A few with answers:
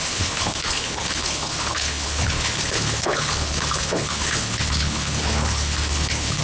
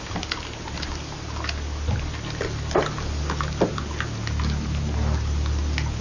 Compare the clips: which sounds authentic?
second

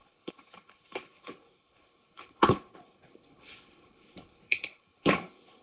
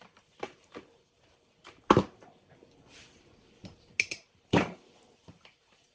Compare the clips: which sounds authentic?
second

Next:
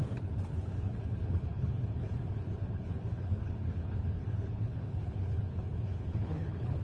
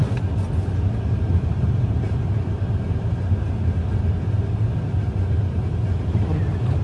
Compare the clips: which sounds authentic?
second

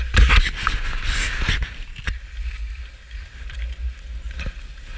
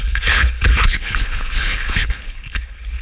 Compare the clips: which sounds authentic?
first